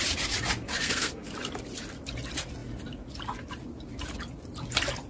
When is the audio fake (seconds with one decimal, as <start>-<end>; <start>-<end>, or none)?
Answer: 0.8-1.3